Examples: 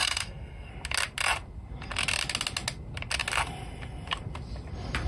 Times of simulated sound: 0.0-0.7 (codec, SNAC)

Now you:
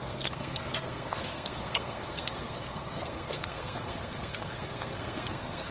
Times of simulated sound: 0.0-5.7 (codec, SNAC)

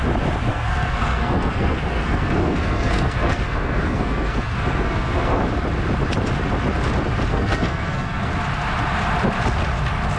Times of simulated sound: 0.5-5.4 (codec, SNAC); 7.3-8.3

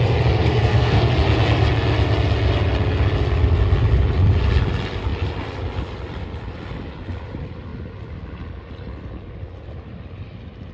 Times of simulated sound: 0.4-1.1 (codec, SNAC)